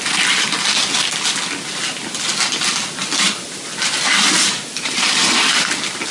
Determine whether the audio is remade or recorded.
recorded